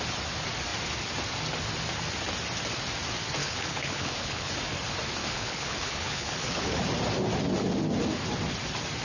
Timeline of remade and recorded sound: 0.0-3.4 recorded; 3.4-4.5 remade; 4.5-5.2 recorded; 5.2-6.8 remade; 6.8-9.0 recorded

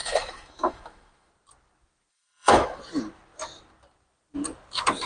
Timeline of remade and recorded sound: 0.0-1.3 remade; 1.3-2.1 recorded; 2.1-2.8 remade; 2.8-5.1 recorded

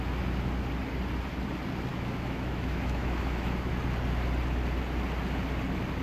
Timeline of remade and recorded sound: 0.0-1.9 recorded; 1.9-3.7 remade; 3.7-6.0 recorded

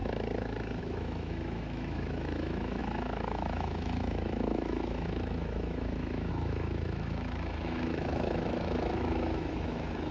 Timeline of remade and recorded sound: 0.0-0.8 recorded; 0.8-10.1 remade

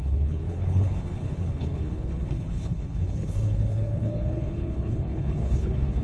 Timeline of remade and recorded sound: 0.0-6.0 remade

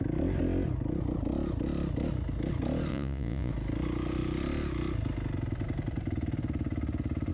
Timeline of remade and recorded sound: 0.0-2.9 recorded; 2.9-3.5 remade; 3.5-7.3 recorded

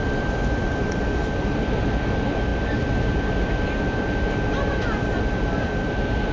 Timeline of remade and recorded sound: 0.0-6.3 recorded